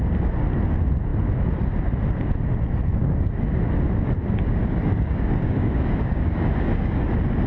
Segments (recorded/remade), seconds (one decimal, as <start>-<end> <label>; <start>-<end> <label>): 0.0-4.6 recorded; 4.6-7.1 remade; 7.1-7.5 recorded